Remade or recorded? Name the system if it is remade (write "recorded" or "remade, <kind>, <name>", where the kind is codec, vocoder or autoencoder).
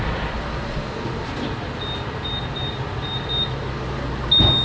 recorded